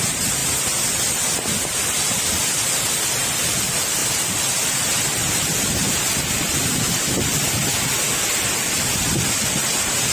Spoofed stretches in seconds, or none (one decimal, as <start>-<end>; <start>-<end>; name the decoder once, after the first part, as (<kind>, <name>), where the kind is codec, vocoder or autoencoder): none